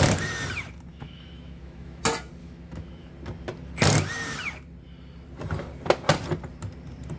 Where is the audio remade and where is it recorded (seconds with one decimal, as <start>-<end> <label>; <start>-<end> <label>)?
0.0-0.9 recorded; 0.9-2.0 remade; 2.0-2.4 recorded; 2.4-3.1 remade; 3.1-7.2 recorded